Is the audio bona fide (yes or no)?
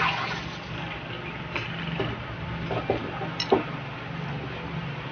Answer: yes